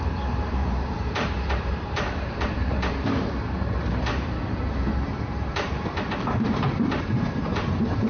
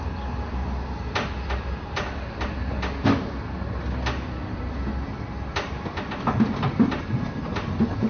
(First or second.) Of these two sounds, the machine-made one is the first